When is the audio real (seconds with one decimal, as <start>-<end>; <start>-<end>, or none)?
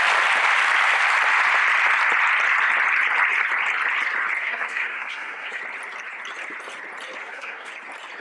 0.0-4.4; 5.6-7.2; 7.7-8.2